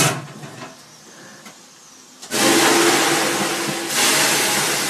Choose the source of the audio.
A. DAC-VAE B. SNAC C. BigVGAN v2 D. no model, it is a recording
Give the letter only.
D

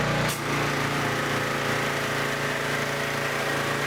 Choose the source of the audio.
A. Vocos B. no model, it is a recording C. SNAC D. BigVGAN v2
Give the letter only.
B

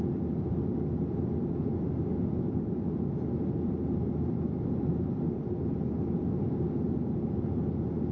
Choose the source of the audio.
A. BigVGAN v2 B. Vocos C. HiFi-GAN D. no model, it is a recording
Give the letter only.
D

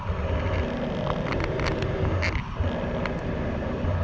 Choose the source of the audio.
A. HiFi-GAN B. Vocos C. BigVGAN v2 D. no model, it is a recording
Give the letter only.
D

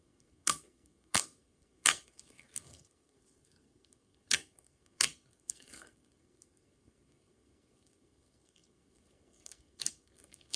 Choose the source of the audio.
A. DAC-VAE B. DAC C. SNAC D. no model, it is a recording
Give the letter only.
C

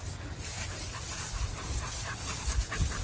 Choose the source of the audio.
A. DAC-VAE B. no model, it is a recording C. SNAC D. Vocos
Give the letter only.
B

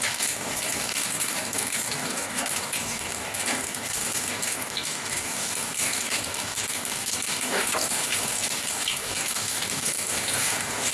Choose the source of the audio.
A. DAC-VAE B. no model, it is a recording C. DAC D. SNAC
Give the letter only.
C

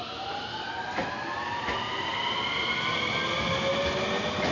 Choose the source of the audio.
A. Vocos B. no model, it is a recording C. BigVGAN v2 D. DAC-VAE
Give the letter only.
B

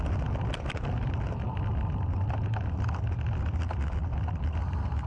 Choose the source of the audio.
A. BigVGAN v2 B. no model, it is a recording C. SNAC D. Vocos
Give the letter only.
B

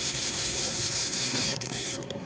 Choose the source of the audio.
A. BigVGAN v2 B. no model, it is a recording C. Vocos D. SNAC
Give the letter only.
D